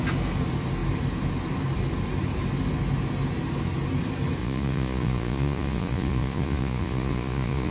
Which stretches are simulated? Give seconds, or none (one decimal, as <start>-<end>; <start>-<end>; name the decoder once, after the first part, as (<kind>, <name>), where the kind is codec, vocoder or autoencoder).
4.4-7.7 (vocoder, Vocos)